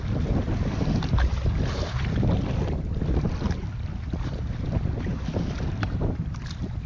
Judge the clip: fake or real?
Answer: real